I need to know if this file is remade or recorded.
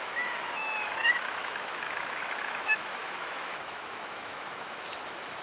remade